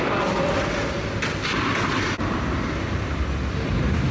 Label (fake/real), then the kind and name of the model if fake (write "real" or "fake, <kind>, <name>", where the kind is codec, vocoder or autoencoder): real